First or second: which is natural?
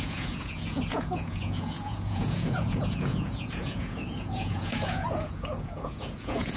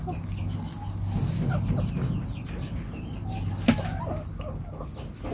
second